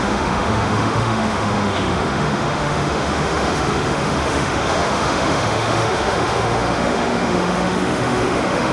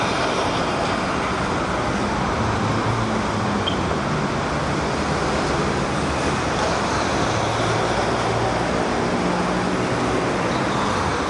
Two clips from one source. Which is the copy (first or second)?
first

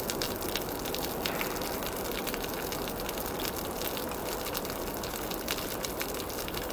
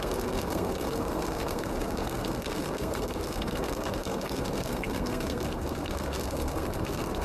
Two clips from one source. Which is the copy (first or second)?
second